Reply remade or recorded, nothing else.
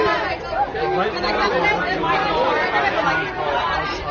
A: recorded